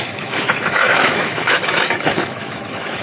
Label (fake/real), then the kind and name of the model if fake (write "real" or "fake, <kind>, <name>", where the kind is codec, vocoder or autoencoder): fake, autoencoder, DAC-VAE